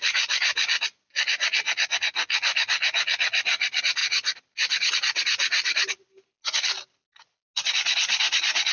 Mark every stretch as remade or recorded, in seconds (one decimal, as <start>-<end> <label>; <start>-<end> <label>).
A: 0.0-8.7 recorded